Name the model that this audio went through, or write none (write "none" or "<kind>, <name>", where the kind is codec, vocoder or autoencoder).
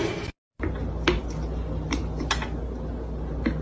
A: none